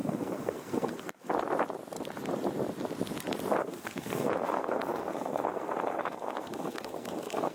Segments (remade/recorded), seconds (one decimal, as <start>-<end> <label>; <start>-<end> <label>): 0.0-1.3 remade; 1.3-3.6 recorded; 3.6-7.5 remade